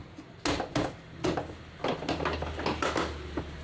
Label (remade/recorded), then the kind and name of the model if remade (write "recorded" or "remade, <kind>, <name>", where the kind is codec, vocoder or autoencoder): recorded